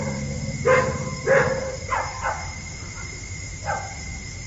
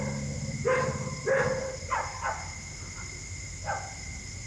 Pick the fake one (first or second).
first